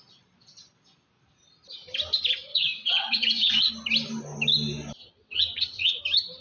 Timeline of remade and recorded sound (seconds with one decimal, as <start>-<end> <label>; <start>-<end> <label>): 0.0-2.5 recorded; 2.5-3.7 remade; 3.7-5.0 recorded; 5.0-6.0 remade; 6.0-6.4 recorded